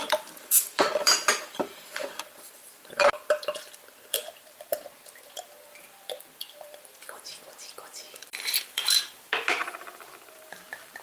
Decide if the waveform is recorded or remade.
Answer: remade